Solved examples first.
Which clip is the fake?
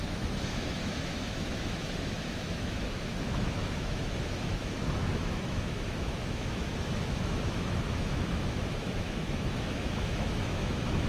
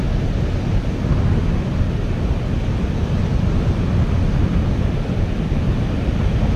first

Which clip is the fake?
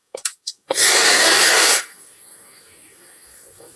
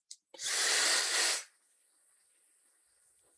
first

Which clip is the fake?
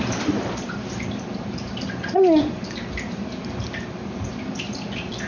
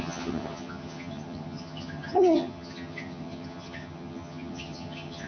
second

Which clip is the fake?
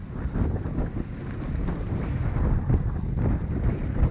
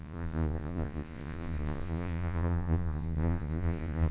second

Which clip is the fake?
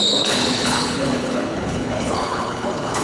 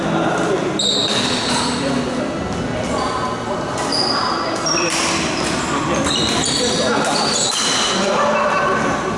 first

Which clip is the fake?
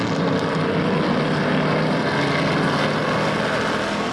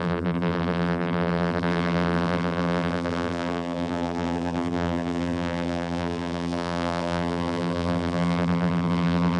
second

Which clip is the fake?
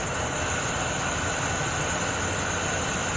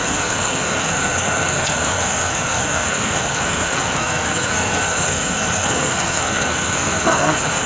second